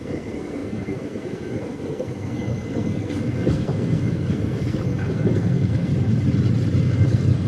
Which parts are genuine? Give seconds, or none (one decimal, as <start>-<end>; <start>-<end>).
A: 5.9-6.8